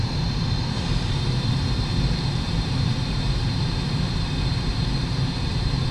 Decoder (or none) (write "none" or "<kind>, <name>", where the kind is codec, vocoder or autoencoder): vocoder, BigVGAN v2